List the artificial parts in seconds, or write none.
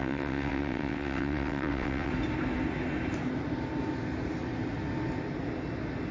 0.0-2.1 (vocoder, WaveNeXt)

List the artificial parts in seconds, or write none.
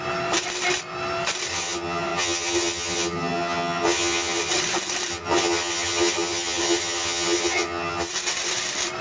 1.5-4.5 (vocoder, HiFi-GAN); 5.1-8.1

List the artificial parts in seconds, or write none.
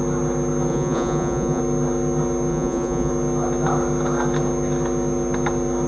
0.7-1.6 (vocoder, Vocos); 2.5-3.1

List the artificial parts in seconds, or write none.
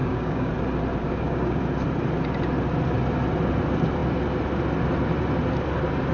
0.0-0.5 (codec, DAC); 1.0-1.6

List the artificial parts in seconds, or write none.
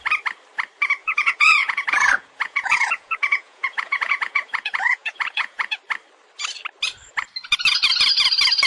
1.0-5.8 (vocoder, Vocos)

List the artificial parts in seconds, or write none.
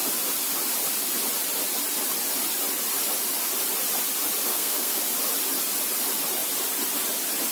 4.5-5.0 (codec, SNAC)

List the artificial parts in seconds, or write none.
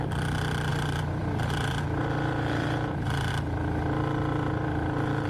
0.7-3.3 (vocoder, BigVGAN v2); 4.3-5.3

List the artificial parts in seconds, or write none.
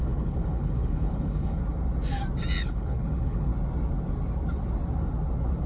0.0-1.6 (codec, HILCodec); 2.6-3.5